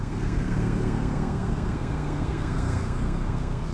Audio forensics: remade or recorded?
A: remade